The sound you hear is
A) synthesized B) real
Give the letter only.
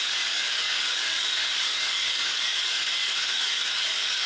A